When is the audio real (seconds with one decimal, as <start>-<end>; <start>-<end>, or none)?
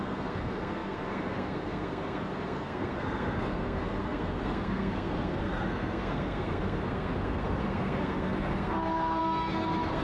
none